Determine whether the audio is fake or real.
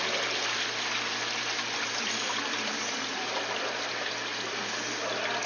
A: real